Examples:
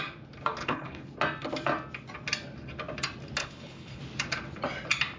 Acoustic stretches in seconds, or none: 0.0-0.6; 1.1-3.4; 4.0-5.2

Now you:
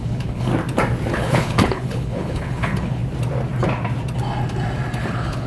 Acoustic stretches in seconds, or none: 0.5-1.1; 3.0-5.0

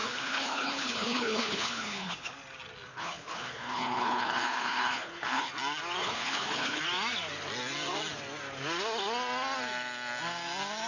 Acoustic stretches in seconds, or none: 2.3-2.9; 5.5-6.0; 6.8-10.9

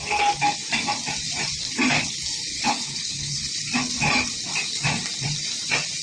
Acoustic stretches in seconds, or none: 0.0-2.5; 3.5-6.0

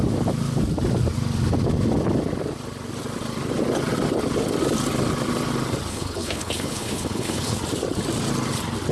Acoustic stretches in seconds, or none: 0.0-5.9; 7.6-8.9

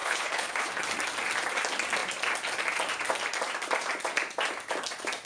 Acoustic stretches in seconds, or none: 0.7-5.2

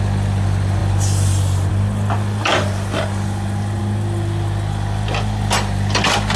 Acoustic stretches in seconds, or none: 0.0-6.4